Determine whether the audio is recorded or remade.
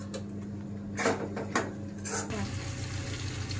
recorded